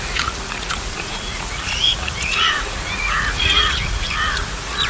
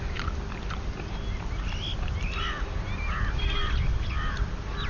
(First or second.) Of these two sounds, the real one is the second